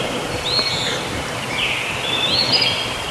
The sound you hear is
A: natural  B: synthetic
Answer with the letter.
A